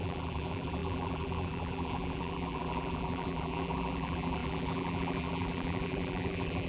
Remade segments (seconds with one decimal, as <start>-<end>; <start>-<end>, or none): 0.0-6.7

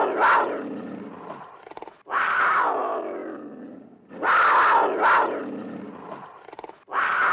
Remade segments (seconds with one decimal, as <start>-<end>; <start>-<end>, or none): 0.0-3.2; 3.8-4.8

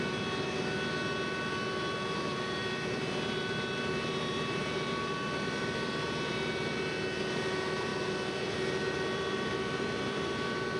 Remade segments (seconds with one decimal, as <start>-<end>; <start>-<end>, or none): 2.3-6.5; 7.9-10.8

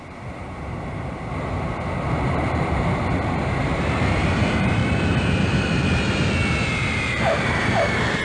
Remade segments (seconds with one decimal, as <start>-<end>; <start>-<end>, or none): 0.0-4.8; 6.7-8.2

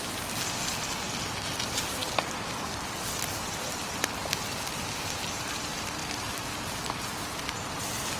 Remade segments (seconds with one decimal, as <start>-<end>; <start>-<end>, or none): 0.0-0.7; 1.6-6.0; 7.0-8.2

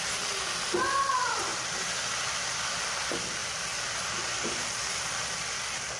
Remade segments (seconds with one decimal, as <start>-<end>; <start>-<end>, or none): 1.5-2.8; 3.4-5.4

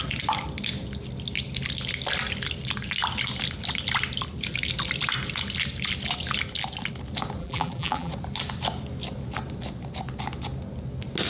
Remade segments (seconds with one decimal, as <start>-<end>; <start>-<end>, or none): 7.4-8.1

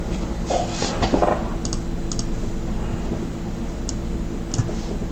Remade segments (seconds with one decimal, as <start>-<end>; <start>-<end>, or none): none